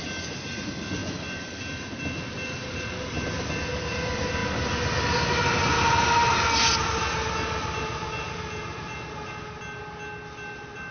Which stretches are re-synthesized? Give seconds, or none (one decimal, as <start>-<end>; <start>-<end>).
none